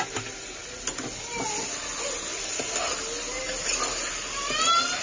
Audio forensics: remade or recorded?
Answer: recorded